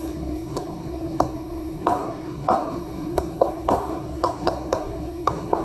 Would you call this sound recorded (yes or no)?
no